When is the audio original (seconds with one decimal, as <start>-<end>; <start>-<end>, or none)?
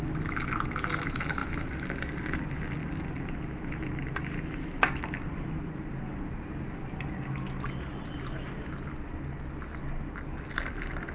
0.0-11.1